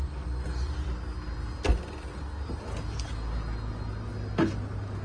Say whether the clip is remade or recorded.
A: recorded